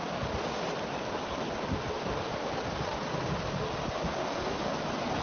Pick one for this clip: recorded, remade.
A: recorded